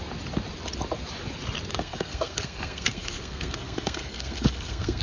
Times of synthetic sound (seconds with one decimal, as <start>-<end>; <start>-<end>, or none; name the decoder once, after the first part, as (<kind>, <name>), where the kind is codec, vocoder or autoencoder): 1.7-5.0 (codec, SNAC)